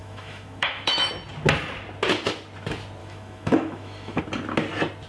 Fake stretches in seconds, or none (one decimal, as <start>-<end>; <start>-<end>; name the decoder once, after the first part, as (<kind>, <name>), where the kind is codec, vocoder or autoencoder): 0.0-1.1 (autoencoder, DAC-VAE); 3.0-4.2